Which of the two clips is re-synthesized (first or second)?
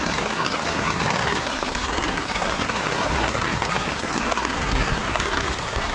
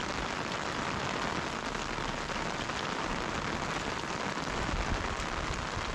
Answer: first